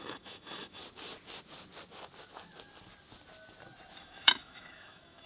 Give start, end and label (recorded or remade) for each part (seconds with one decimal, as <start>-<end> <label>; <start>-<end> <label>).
0.0-0.8 remade; 0.8-4.0 recorded; 4.0-5.3 remade